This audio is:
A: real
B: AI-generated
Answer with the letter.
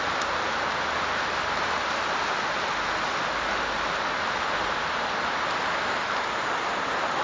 A